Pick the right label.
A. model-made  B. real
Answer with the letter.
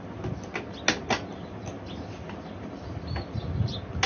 B